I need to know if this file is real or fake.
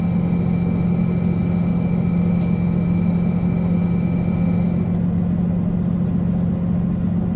real